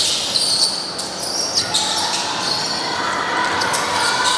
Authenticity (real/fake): real